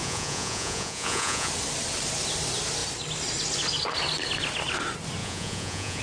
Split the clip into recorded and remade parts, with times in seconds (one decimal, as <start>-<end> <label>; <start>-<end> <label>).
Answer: 0.0-1.5 remade; 1.5-5.2 recorded; 5.2-6.0 remade